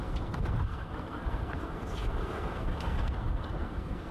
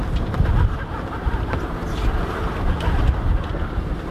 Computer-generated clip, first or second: first